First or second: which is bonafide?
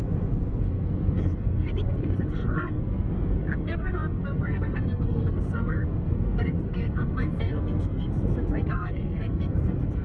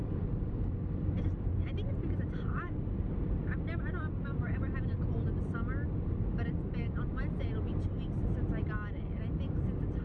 second